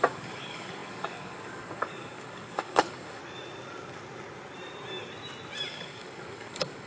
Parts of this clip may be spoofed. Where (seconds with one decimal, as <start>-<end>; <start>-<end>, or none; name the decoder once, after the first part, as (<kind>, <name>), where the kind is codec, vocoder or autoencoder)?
0.0-3.2 (codec, DAC); 5.7-6.9